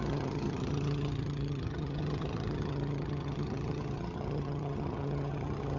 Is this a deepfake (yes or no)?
yes